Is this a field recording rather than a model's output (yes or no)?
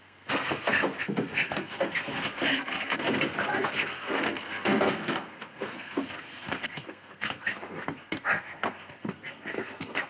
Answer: no